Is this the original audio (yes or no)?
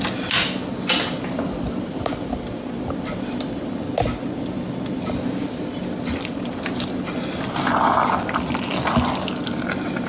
yes